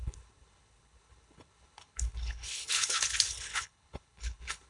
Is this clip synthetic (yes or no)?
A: yes